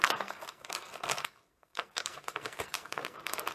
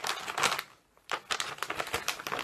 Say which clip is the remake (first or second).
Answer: first